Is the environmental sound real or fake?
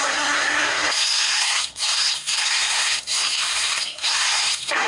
fake